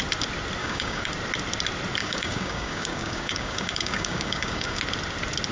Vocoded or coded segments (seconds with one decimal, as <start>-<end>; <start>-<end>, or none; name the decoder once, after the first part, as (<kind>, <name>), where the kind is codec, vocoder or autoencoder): 0.6-1.1 (codec, DAC); 2.0-4.8